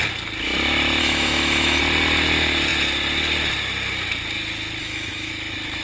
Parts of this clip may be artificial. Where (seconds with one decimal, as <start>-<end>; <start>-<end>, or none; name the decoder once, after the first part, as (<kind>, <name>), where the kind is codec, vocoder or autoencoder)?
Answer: 1.0-1.8 (autoencoder, DAC-VAE); 4.8-5.3